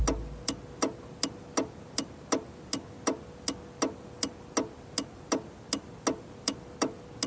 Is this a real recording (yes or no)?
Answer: yes